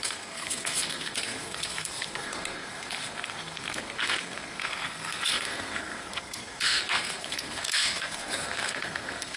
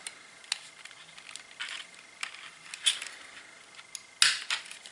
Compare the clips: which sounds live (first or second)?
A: second